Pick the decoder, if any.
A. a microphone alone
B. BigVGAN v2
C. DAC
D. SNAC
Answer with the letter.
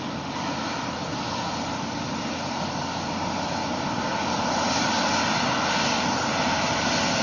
A